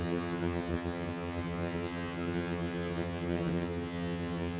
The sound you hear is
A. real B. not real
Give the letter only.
B